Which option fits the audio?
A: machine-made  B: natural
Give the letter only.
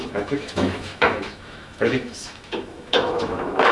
A